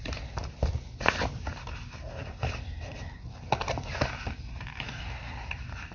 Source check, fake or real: real